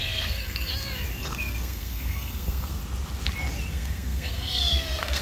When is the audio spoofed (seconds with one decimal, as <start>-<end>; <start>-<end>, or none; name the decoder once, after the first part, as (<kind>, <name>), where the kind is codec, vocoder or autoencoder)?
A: 0.0-0.7 (codec, SNAC); 1.2-2.8; 3.7-5.2